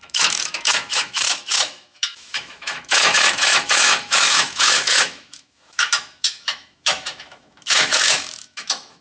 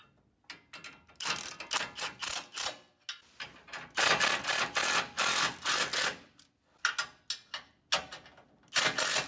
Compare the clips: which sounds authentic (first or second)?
second